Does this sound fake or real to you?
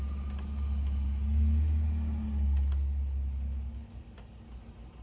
real